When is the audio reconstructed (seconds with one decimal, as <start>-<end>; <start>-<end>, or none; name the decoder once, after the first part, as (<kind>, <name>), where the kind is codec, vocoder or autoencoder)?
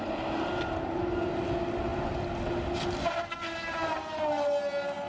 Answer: none